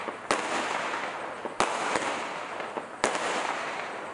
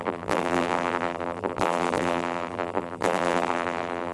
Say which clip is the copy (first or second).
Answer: second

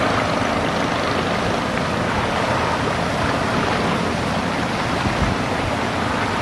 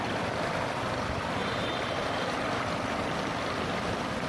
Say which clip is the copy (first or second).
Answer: second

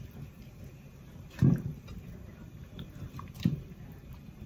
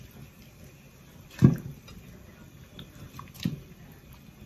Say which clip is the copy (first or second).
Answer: first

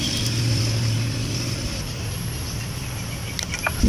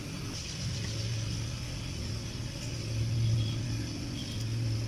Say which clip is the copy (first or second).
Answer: first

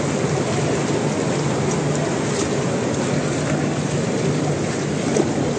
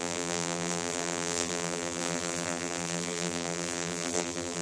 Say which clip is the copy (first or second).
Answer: second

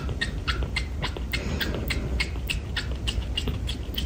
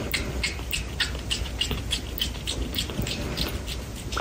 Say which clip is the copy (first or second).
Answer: first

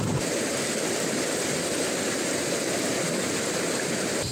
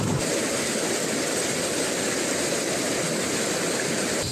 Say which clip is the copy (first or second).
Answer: first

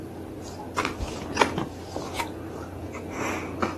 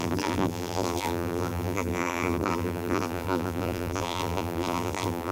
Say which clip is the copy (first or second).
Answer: second